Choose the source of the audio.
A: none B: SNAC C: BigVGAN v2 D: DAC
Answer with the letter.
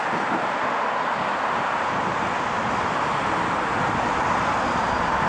A